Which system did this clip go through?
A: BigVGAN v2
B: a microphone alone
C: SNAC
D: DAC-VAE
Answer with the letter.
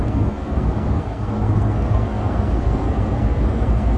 C